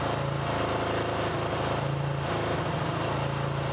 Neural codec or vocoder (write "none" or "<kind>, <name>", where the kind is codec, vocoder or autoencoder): none